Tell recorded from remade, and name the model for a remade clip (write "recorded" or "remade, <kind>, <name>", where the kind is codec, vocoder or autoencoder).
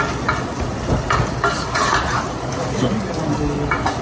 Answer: recorded